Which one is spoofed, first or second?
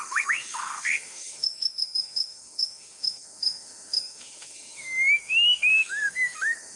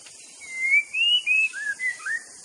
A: first